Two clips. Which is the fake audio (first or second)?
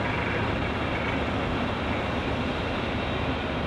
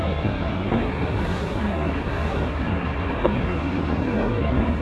second